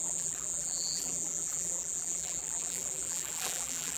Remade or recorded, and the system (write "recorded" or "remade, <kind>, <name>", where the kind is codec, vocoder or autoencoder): remade, vocoder, BigVGAN v2